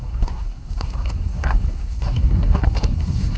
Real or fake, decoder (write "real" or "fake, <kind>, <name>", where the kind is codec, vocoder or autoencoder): fake, codec, SNAC